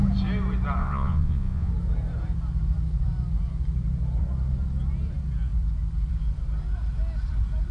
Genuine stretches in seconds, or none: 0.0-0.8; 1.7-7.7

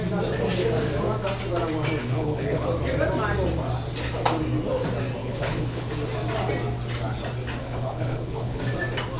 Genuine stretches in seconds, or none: 0.0-2.0; 2.7-5.2; 5.9-7.6; 8.6-9.2